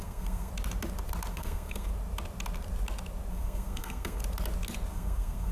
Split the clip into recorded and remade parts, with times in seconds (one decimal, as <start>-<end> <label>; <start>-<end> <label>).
0.0-0.5 remade; 0.5-1.3 recorded; 1.3-1.9 remade; 1.9-3.3 recorded; 3.3-4.2 remade; 4.2-4.9 recorded; 4.9-5.5 remade